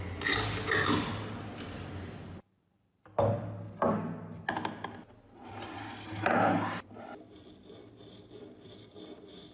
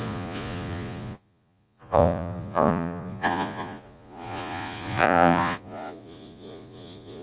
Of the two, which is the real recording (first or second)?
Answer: first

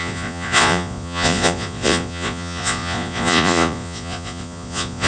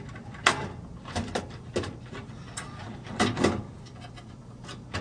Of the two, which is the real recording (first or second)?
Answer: second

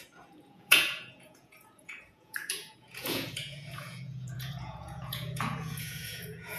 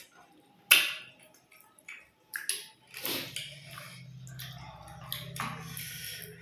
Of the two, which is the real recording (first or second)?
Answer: second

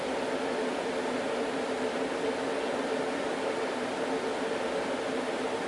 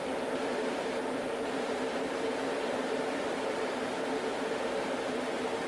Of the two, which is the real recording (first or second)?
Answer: first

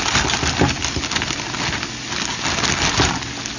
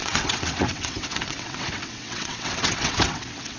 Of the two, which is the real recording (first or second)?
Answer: first